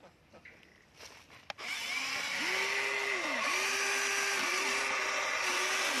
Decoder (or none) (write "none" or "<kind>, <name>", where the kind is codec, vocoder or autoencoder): none